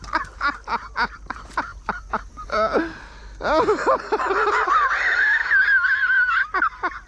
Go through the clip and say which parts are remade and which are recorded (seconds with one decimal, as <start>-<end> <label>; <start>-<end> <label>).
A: 0.0-7.1 recorded